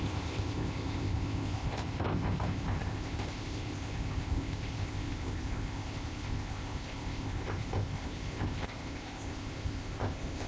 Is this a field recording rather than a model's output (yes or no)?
no